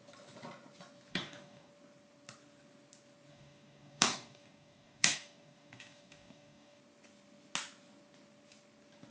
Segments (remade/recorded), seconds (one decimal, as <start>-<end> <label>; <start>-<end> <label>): 0.0-1.1 recorded; 1.1-1.7 remade; 1.7-3.3 recorded; 3.3-6.8 remade; 6.8-9.1 recorded